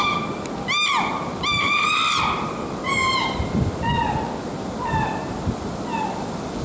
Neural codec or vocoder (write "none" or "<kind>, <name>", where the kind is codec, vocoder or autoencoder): none